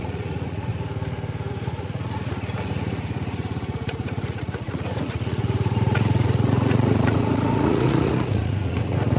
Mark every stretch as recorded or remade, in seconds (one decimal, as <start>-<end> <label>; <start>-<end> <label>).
0.0-0.7 remade; 0.7-1.5 recorded; 1.5-9.2 remade